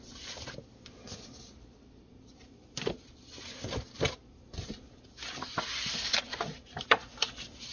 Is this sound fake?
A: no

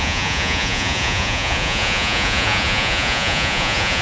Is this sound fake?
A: yes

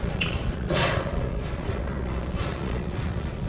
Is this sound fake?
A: yes